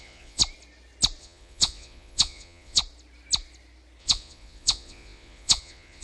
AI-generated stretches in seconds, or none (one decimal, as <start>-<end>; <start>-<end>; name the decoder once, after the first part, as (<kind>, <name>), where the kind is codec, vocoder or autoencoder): 0.0-0.4 (vocoder, Vocos); 1.2-2.8; 4.0-6.0